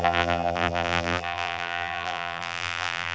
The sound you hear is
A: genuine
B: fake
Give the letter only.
B